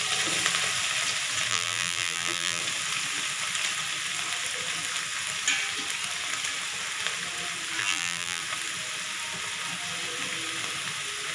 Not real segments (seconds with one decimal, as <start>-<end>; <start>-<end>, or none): 1.5-2.6; 7.8-8.4